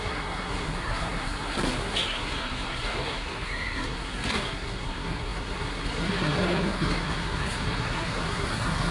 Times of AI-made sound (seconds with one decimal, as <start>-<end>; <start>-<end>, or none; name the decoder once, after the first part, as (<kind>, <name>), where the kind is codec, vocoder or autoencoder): 0.0-8.9 (codec, SNAC)